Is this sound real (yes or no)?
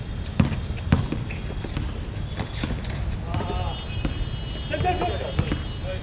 yes